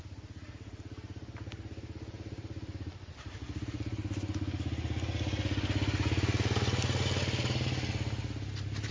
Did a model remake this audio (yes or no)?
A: no